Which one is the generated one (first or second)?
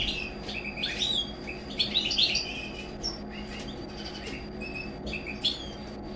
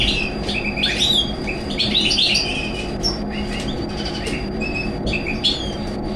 second